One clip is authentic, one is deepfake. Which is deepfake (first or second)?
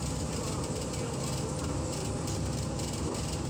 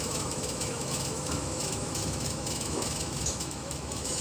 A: second